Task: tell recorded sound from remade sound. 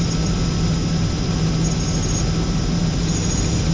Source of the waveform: recorded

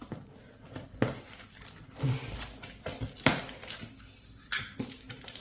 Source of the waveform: recorded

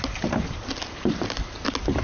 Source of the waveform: recorded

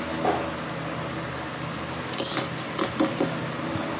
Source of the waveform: recorded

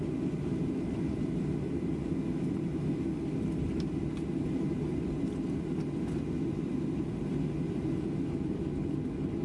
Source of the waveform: recorded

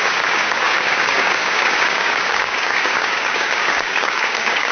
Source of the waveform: remade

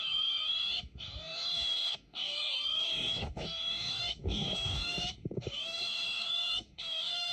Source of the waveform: remade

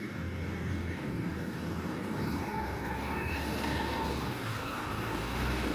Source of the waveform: remade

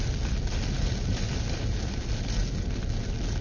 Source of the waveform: recorded